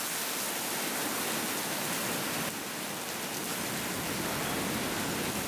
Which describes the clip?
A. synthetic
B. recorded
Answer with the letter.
B